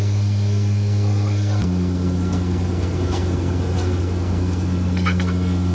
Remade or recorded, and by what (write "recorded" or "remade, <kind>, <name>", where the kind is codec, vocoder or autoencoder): remade, codec, SNAC